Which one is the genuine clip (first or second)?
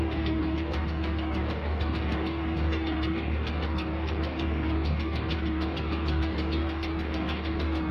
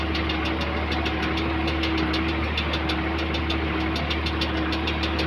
second